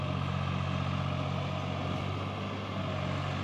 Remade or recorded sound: recorded